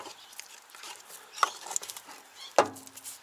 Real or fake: real